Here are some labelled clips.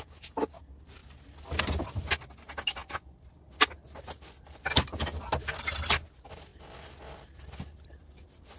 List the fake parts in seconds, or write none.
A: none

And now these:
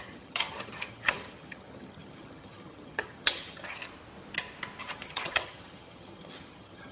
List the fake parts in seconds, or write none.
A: 0.0-3.8 (vocoder, HiFi-GAN); 4.8-6.9

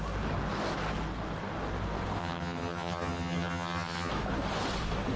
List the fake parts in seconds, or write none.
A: 2.2-4.1 (vocoder, HiFi-GAN)

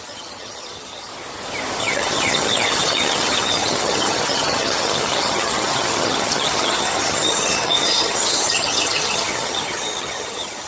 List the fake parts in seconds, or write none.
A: 0.0-1.1 (vocoder, HiFi-GAN); 1.8-10.7